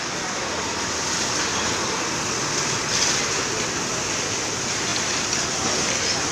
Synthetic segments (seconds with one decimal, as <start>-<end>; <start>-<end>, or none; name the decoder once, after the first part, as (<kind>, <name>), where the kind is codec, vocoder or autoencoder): none